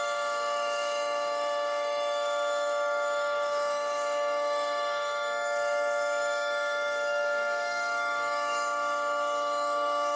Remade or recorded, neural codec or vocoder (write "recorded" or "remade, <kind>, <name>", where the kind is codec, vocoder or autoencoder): remade, autoencoder, DAC-VAE